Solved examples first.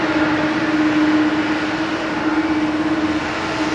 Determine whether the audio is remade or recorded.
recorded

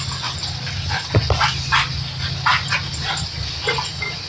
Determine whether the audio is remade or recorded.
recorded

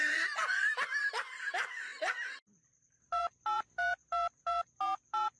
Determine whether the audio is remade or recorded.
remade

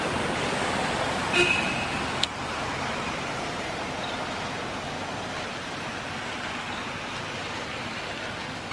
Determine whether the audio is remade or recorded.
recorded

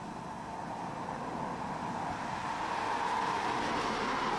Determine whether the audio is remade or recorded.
recorded